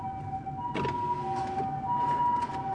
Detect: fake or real real